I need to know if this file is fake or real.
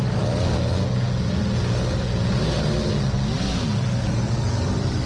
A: real